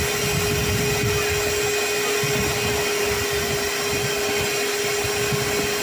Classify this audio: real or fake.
real